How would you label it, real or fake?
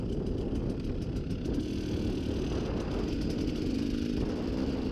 real